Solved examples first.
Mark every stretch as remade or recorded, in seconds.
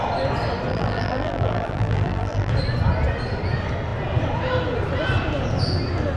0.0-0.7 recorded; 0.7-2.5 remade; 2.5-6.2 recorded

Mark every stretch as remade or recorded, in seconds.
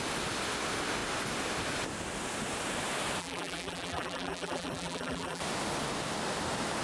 0.0-3.2 recorded; 3.2-5.4 remade; 5.4-6.8 recorded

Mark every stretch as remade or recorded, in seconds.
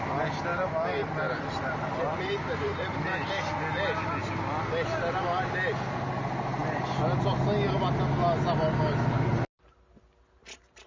0.0-0.5 recorded; 0.5-3.3 remade; 3.3-10.9 recorded